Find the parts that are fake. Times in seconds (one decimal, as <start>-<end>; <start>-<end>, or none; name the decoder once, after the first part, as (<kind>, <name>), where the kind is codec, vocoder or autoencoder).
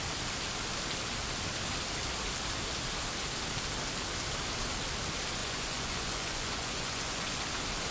5.4-7.4 (vocoder, Vocos)